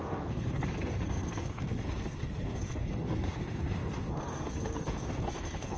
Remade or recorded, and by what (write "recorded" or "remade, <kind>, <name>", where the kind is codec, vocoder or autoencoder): remade, codec, SNAC